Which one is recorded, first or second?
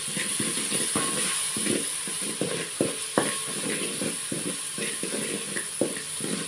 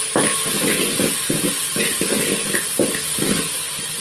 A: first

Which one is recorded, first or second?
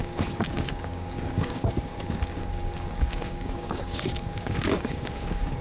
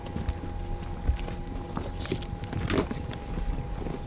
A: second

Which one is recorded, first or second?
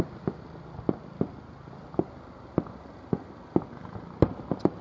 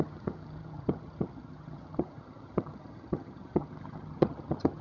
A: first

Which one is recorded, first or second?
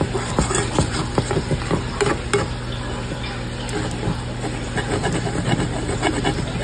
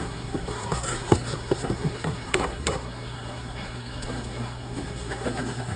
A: first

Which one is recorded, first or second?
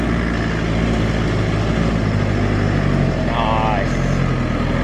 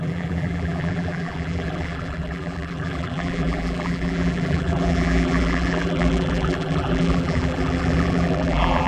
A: first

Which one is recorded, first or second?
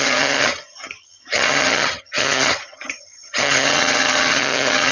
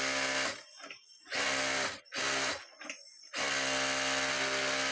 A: second